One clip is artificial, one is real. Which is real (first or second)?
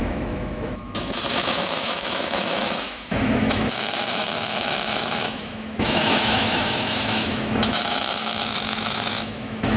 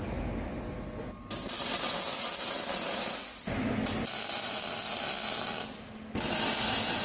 second